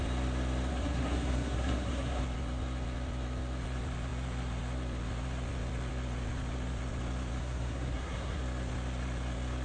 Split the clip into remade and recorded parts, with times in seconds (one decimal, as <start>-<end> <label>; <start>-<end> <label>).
0.0-0.7 recorded; 0.7-2.2 remade; 2.2-7.4 recorded; 7.4-8.4 remade; 8.4-9.6 recorded